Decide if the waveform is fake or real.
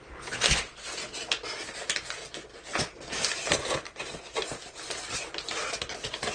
real